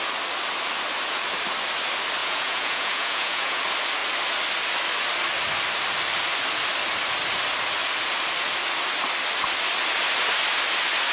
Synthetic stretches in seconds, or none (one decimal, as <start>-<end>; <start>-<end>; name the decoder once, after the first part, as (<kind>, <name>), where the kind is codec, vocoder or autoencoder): 2.2-3.6 (vocoder, Vocos)